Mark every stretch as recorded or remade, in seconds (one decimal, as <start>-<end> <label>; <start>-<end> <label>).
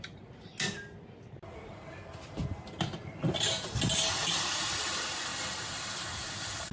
0.0-0.5 remade; 0.5-4.5 recorded; 4.5-5.3 remade; 5.3-5.9 recorded; 5.9-6.7 remade